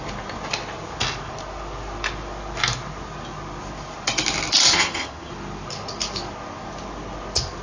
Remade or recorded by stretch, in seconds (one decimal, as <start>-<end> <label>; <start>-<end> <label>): 0.0-4.7 recorded; 4.7-5.3 remade; 5.3-7.6 recorded